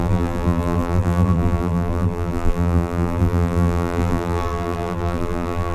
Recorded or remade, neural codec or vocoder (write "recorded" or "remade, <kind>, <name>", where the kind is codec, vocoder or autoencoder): remade, vocoder, BigVGAN v2